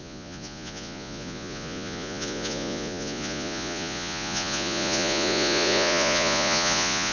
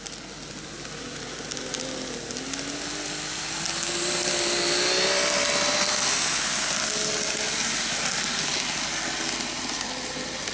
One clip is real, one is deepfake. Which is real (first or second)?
second